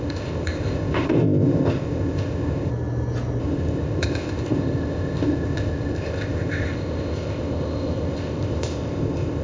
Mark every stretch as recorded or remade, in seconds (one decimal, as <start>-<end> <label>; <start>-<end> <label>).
0.0-2.7 remade; 2.7-3.4 recorded; 3.4-9.4 remade